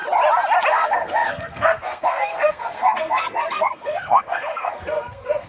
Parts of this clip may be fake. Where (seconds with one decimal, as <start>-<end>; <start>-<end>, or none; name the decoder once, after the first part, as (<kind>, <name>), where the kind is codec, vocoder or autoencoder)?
0.7-5.5 (codec, SNAC)